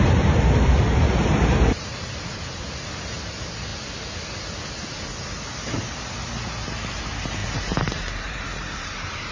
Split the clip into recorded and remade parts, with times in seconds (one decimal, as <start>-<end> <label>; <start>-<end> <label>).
0.0-3.7 remade; 3.7-7.0 recorded; 7.0-9.3 remade